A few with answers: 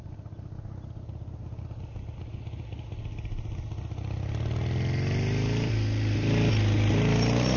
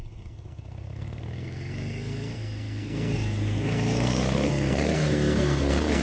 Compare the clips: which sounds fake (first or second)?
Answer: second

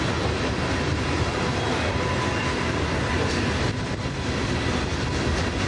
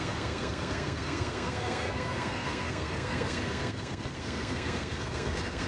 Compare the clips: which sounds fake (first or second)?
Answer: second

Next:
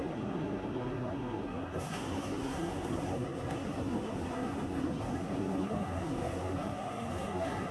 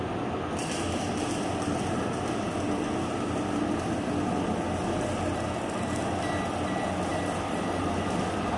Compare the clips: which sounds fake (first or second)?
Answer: first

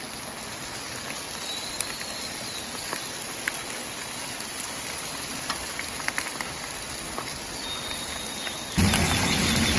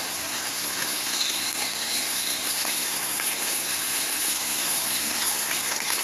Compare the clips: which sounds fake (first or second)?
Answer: second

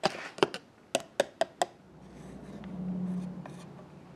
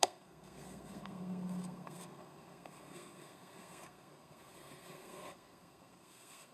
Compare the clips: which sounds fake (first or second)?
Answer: second